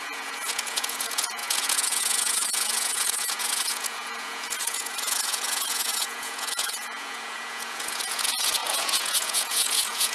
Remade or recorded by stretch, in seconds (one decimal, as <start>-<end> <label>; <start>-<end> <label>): 0.0-10.1 remade